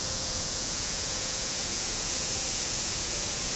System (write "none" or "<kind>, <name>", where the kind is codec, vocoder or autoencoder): vocoder, Vocos